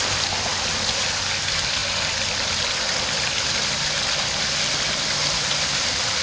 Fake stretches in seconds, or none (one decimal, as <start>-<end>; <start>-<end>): none